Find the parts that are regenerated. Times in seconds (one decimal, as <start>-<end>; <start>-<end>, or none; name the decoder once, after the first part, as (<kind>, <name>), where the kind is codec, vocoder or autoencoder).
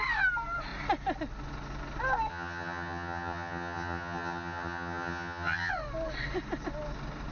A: 2.3-5.7 (vocoder, HiFi-GAN)